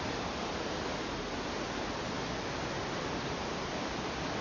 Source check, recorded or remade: recorded